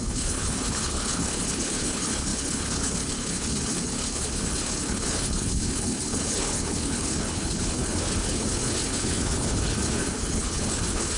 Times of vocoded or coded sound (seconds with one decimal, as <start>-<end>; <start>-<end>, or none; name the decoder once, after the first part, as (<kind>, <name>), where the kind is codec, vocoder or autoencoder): 0.0-11.2 (codec, HILCodec)